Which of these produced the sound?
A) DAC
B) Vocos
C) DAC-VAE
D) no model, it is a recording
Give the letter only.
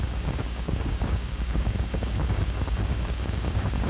A